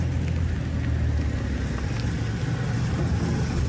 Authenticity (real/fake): real